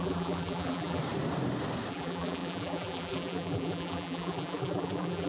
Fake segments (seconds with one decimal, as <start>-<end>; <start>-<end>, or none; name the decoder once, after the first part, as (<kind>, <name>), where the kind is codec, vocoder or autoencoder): 0.0-1.0 (vocoder, BigVGAN v2); 1.9-5.3